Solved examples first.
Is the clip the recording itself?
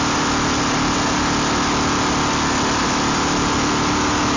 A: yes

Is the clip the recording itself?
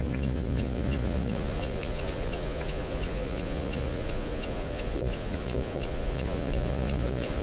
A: no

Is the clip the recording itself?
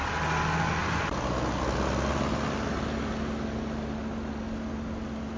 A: yes